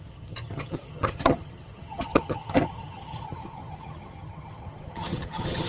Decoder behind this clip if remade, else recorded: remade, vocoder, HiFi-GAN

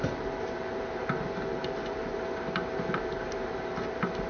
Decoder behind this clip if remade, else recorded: remade, vocoder, BigVGAN v2